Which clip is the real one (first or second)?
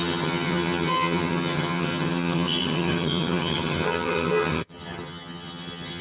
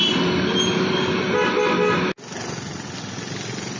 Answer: second